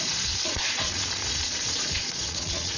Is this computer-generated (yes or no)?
yes